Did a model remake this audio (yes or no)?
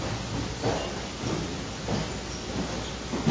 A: no